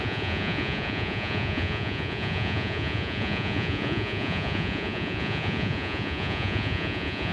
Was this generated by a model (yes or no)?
yes